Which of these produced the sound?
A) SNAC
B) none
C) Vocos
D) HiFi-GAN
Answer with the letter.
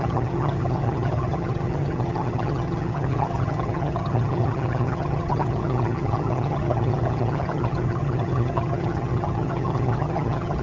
D